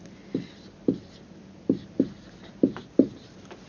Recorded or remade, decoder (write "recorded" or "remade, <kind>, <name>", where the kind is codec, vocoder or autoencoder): recorded